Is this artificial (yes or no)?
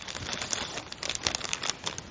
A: no